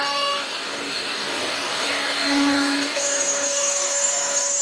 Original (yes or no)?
no